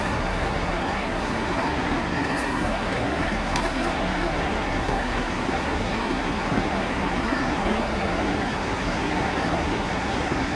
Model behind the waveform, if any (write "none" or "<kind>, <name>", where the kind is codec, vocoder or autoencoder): codec, SNAC